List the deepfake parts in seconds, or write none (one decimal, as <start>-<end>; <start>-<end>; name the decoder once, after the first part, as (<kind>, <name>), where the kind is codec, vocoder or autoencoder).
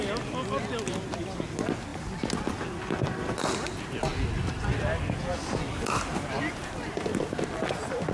none